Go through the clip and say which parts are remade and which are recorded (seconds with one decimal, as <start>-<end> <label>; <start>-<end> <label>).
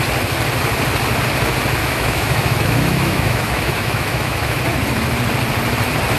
0.0-1.8 recorded; 1.8-4.6 remade; 4.6-6.2 recorded